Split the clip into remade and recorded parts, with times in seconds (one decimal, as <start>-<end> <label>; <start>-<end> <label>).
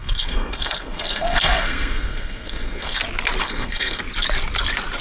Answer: 0.0-3.0 remade; 3.0-3.4 recorded; 3.4-4.0 remade; 4.0-5.0 recorded